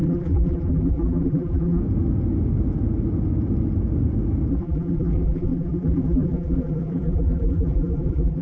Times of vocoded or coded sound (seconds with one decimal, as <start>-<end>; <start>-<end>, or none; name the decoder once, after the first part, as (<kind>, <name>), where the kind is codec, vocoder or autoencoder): 0.0-1.8 (vocoder, BigVGAN v2); 4.5-8.4